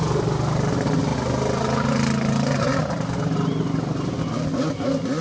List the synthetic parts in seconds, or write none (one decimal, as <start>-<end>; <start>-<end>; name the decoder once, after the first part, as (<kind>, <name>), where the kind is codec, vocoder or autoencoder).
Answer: none